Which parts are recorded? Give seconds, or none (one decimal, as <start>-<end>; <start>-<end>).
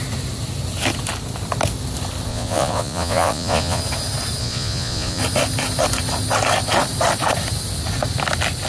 0.0-2.3; 3.8-4.4; 5.2-8.7